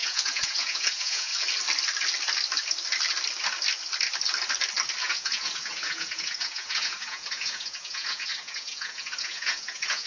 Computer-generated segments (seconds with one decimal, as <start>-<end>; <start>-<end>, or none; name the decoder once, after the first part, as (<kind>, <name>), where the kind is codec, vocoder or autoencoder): 0.0-1.3 (vocoder, Vocos); 5.0-10.1